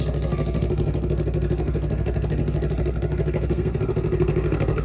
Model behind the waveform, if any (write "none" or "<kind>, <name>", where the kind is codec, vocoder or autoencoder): codec, SNAC